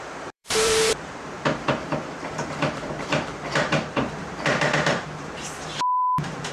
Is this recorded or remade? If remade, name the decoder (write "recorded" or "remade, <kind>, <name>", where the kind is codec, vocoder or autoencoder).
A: remade, vocoder, BigVGAN v2